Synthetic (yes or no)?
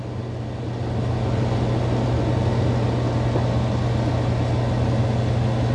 no